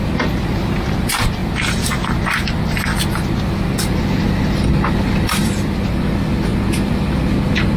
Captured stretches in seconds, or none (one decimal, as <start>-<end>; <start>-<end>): 0.0-7.8